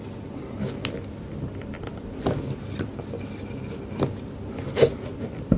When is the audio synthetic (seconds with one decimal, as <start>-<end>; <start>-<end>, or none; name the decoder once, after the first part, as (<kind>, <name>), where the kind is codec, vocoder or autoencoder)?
none